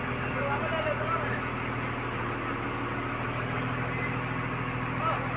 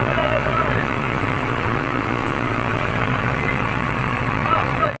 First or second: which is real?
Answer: first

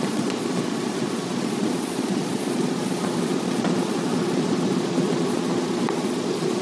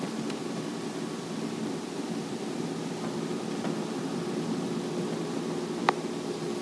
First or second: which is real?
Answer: second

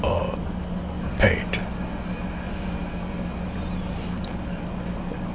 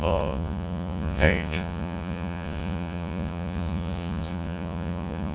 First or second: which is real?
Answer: first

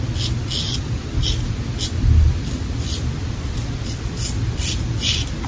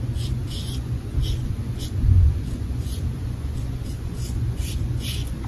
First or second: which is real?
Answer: first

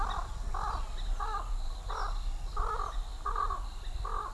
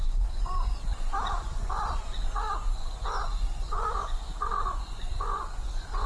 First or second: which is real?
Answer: first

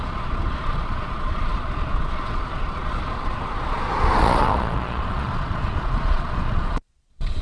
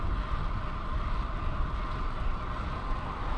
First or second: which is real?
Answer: second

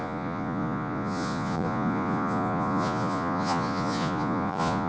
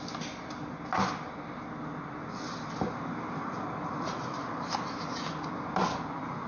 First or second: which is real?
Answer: second